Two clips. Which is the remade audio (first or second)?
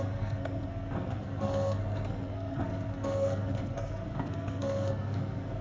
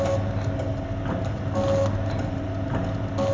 first